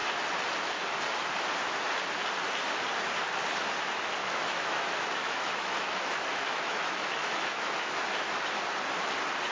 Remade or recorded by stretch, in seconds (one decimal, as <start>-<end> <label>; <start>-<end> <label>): 0.0-4.2 recorded; 4.2-8.4 remade; 8.4-9.5 recorded